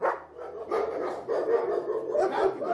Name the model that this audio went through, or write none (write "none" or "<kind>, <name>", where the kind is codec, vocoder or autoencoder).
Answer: none